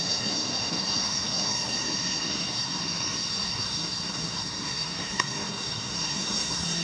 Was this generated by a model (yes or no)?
yes